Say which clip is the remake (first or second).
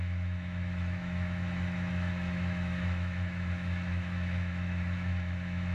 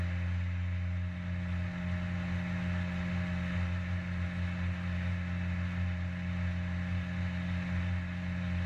first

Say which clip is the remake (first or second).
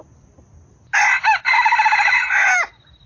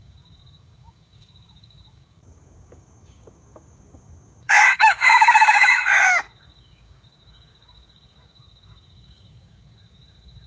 second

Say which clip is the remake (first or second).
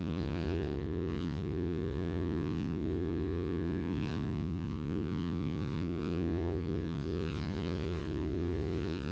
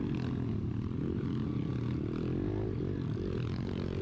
first